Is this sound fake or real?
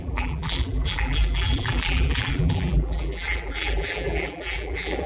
fake